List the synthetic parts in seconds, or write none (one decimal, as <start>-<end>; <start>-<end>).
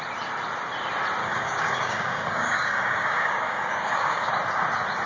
1.2-4.3